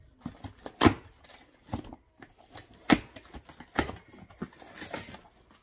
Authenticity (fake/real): real